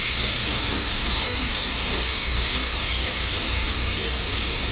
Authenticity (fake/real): fake